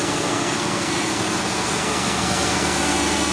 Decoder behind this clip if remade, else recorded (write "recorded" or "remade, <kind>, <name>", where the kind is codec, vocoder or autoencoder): remade, codec, SNAC